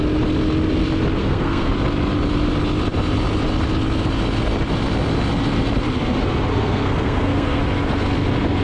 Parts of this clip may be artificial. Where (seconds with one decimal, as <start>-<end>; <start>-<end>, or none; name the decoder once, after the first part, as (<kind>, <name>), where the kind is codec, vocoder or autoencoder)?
1.2-1.7 (codec, SNAC); 6.5-7.6